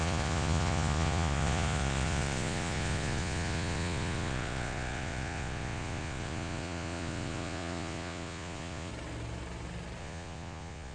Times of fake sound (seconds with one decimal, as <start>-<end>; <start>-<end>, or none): 0.0-8.9; 10.0-10.9